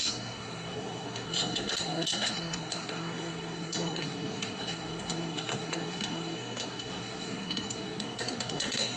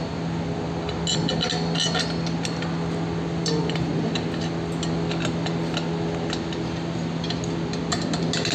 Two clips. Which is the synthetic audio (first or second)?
first